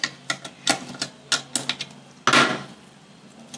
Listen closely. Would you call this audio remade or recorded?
recorded